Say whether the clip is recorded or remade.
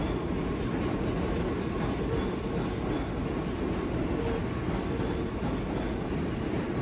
recorded